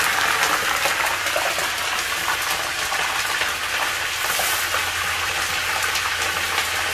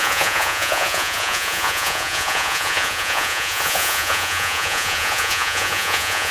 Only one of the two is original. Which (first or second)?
first